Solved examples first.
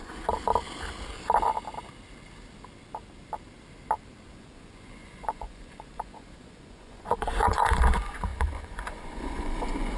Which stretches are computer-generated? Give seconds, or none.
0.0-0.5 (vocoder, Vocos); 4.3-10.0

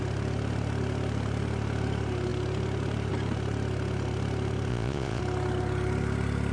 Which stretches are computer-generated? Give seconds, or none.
4.7-5.2 (vocoder, Vocos)

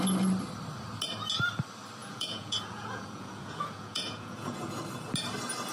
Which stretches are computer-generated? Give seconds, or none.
2.0-4.8 (vocoder, Vocos)

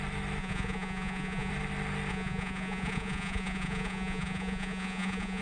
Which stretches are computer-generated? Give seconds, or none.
0.4-1.5 (vocoder, Vocos); 2.1-5.4

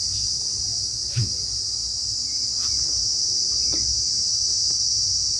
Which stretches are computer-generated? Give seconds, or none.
none

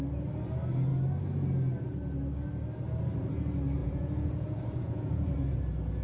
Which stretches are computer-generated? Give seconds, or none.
3.8-5.6 (vocoder, Vocos)

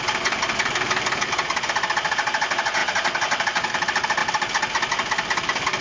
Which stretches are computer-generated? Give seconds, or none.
none

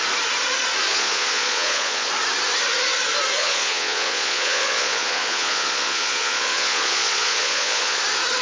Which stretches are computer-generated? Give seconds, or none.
0.9-2.1 (vocoder, Vocos); 3.4-8.0